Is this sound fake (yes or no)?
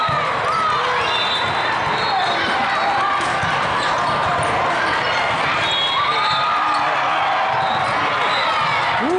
no